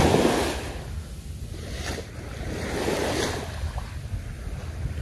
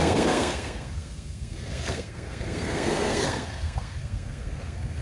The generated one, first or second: second